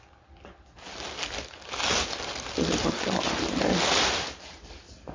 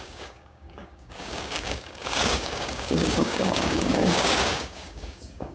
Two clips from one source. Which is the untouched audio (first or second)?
first